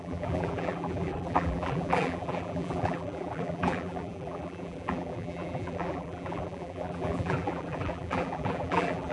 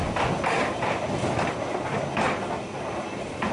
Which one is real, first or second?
second